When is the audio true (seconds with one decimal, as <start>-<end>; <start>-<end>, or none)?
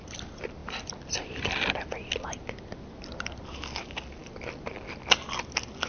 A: 0.0-5.9